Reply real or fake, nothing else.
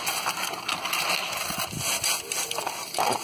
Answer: real